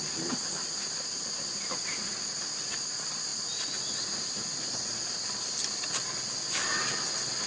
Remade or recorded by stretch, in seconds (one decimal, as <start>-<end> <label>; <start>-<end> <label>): 0.0-7.5 recorded